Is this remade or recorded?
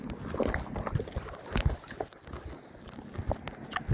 recorded